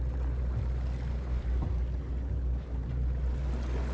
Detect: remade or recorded recorded